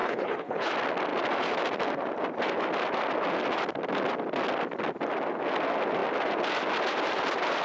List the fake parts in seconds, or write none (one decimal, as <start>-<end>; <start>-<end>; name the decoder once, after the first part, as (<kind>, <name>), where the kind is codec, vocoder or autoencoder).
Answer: 0.0-0.7 (codec, HILCodec)